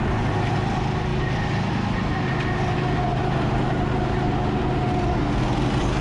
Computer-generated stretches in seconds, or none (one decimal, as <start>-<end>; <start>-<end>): none